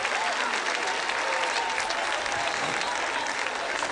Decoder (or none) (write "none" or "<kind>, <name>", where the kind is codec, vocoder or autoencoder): none